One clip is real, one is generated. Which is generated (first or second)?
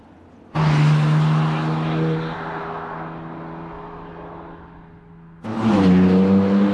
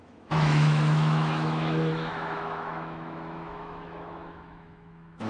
second